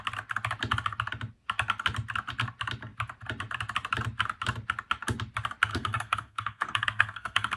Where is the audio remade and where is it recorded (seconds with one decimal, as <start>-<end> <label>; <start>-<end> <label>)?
0.0-5.7 recorded; 5.7-7.6 remade